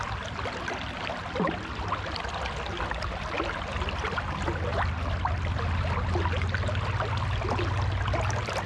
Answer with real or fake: real